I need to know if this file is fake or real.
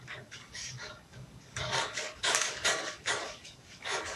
fake